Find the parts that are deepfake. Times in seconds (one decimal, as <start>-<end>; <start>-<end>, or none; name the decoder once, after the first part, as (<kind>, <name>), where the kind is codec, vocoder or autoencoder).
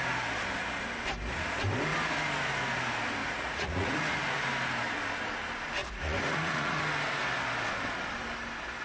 3.2-4.2 (vocoder, Vocos); 5.8-6.8